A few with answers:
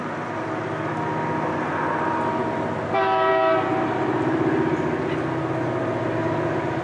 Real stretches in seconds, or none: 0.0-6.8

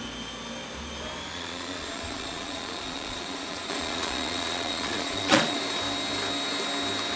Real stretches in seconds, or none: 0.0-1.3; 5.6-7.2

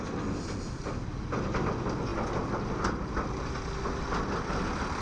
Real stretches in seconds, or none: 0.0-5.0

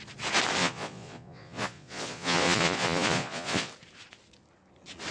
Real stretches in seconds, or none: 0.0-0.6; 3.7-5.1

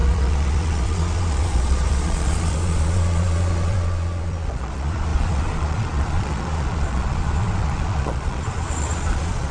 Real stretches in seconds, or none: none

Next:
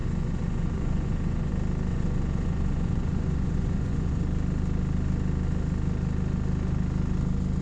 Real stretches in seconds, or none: 1.5-1.9; 4.2-7.6